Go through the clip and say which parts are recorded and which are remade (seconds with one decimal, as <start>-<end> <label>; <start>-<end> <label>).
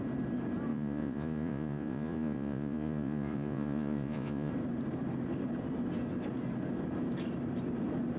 0.0-0.7 recorded; 0.7-4.5 remade; 4.5-8.2 recorded